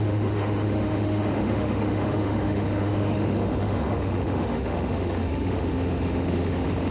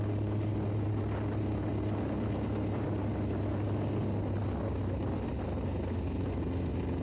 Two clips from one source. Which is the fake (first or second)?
first